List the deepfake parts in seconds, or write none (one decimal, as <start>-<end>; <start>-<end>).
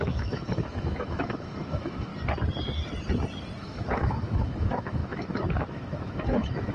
0.0-2.1; 3.6-6.7